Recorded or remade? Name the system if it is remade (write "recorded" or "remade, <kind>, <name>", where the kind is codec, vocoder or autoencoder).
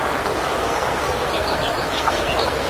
remade, codec, SNAC